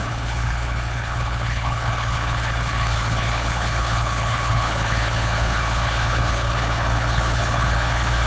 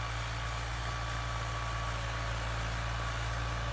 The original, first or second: second